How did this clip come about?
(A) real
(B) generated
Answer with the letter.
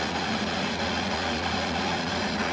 B